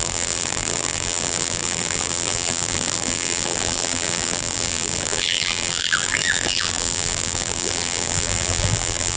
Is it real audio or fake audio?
fake